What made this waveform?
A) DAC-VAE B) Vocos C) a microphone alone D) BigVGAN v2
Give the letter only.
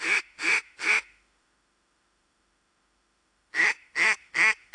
A